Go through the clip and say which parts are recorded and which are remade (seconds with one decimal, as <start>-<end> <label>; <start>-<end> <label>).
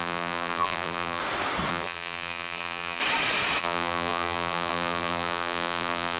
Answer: 0.0-1.2 remade; 1.2-1.7 recorded; 1.7-3.0 remade; 3.0-3.6 recorded; 3.6-6.2 remade